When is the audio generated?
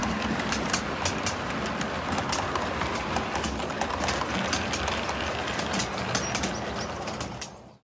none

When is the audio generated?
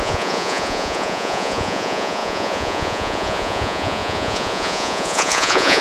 0.0-5.8 (vocoder, Vocos)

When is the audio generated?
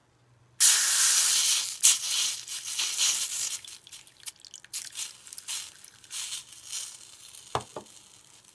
none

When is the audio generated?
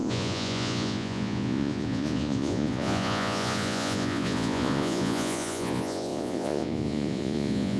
0.0-7.8 (vocoder, Vocos)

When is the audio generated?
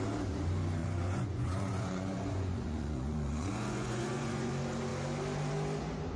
0.8-4.5 (vocoder, Vocos)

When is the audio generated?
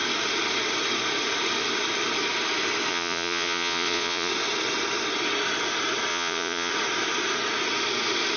2.9-4.3 (vocoder, Vocos); 6.1-6.7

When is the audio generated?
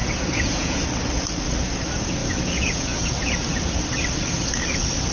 0.0-0.8 (vocoder, Vocos); 2.2-3.1